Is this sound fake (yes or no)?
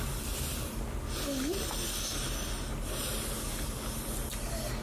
no